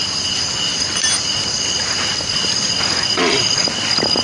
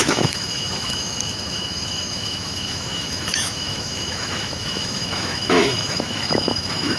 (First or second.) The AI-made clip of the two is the second